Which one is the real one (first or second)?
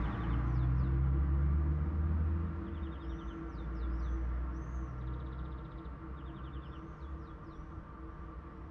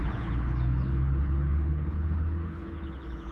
first